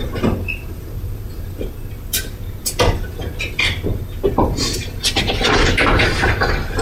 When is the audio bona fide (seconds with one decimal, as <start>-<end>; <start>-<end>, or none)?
0.0-6.8